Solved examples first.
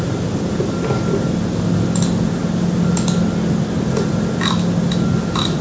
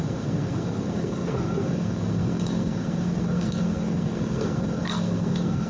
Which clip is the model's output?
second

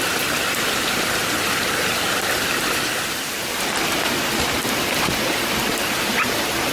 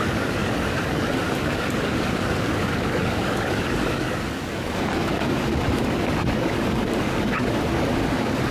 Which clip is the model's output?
second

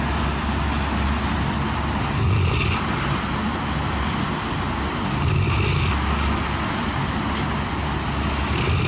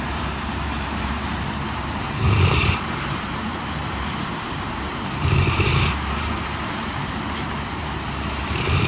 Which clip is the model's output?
second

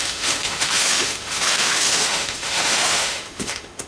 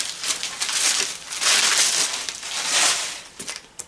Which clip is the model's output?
first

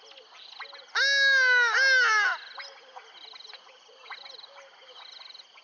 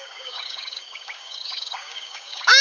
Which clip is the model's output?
second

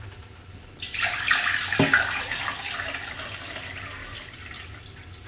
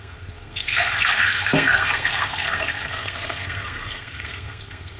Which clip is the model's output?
second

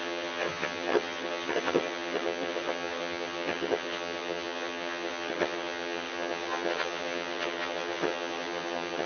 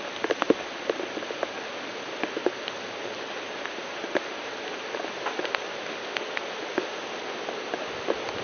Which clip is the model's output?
first